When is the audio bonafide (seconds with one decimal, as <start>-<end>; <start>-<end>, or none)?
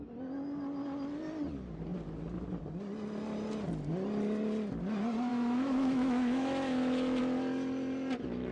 0.0-5.3; 7.2-8.5